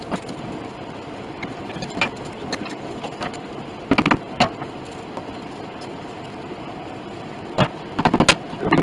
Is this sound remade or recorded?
recorded